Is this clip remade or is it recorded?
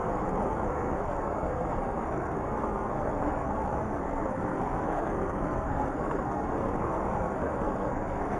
remade